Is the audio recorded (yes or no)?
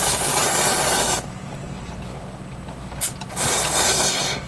yes